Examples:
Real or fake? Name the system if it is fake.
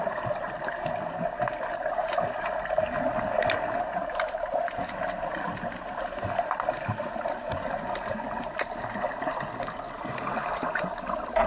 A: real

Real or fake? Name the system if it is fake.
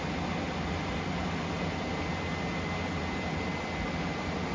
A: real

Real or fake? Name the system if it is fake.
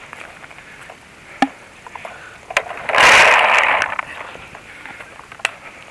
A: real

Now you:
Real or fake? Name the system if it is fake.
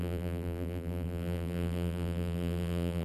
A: fake, vocoder, BigVGAN v2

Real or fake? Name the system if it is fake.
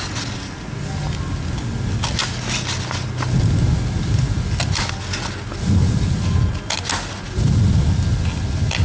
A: real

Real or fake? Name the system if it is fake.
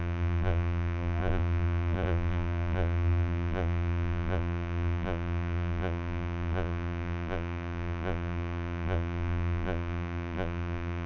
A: fake, vocoder, BigVGAN v2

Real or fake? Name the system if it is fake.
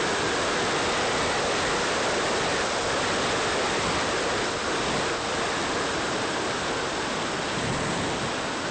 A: real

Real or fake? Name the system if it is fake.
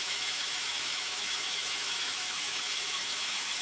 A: fake, autoencoder, DAC-VAE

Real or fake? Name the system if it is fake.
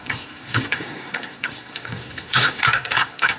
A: fake, codec, SNAC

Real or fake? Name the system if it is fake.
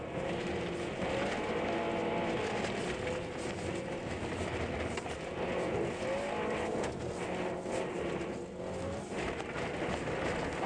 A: real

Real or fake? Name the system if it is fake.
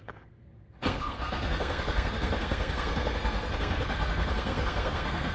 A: fake, codec, SNAC